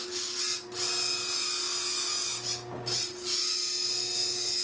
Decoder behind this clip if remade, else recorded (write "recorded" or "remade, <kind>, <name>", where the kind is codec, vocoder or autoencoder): recorded